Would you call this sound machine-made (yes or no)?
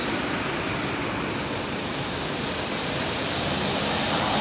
no